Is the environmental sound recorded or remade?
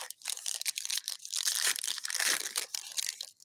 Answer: remade